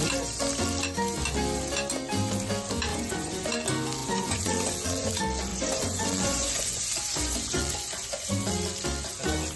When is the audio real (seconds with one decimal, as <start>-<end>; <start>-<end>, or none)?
0.0-2.9; 3.4-4.0; 5.1-5.5; 8.3-9.6